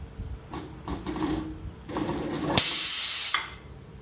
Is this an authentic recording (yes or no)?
no